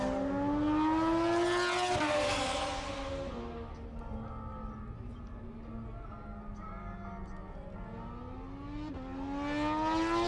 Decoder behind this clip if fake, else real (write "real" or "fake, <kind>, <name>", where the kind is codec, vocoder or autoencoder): real